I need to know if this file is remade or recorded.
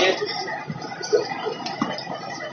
recorded